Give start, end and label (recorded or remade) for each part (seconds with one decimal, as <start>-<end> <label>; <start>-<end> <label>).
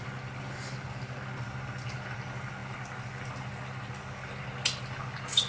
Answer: 0.0-5.5 recorded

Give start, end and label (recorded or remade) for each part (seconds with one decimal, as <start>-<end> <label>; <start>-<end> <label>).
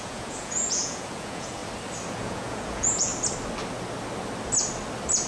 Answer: 0.0-1.6 remade; 1.6-2.2 recorded; 2.2-3.1 remade; 3.1-5.3 recorded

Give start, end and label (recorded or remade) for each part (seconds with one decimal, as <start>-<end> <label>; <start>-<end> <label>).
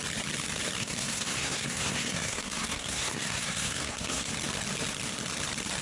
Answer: 0.0-0.8 recorded; 0.8-4.3 remade; 4.3-5.8 recorded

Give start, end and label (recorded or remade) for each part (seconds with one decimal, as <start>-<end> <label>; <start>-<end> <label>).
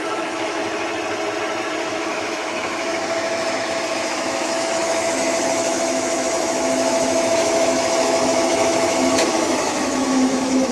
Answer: 0.0-0.6 remade; 0.6-1.8 recorded; 1.8-10.7 remade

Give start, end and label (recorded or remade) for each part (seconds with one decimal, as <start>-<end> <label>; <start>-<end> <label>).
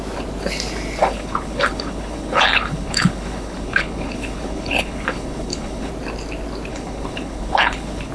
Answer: 0.0-1.0 recorded; 1.0-5.9 remade; 5.9-6.7 recorded; 6.7-8.1 remade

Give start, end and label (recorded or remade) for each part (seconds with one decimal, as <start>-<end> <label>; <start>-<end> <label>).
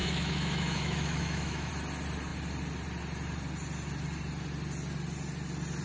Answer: 0.0-1.7 remade; 1.7-5.8 recorded